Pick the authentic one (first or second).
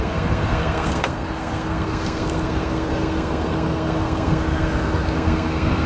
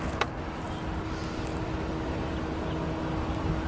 second